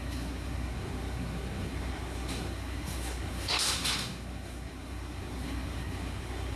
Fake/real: fake